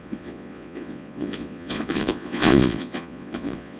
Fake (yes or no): yes